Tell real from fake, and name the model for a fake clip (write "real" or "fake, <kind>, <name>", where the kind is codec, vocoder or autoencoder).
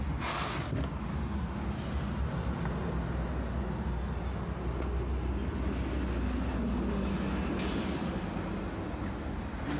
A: real